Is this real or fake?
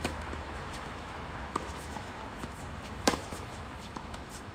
fake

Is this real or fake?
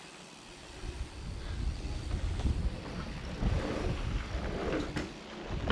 real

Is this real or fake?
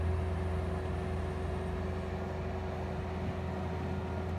real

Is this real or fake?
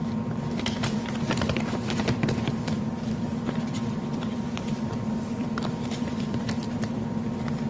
fake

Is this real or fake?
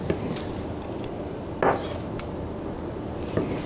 real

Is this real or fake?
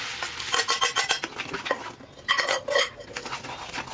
real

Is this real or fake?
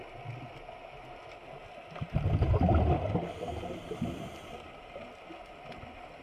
real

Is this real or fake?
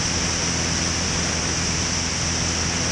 real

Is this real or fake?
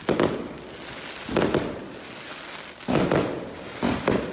real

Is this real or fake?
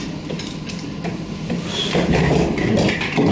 real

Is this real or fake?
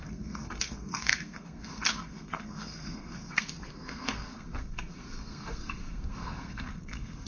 fake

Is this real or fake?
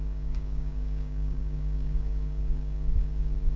fake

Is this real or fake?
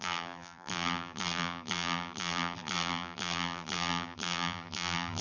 fake